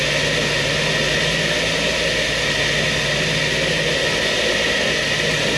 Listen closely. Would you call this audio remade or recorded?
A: recorded